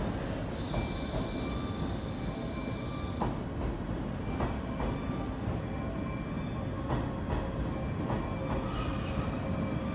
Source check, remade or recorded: recorded